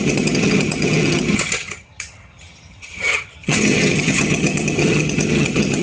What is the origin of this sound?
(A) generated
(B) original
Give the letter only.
A